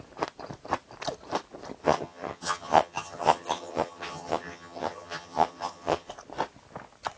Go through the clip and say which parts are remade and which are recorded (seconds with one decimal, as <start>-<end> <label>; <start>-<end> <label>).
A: 0.0-1.8 recorded; 1.8-6.1 remade; 6.1-7.2 recorded